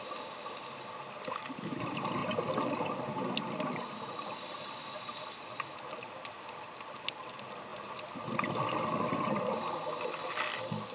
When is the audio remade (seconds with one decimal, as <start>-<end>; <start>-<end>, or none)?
none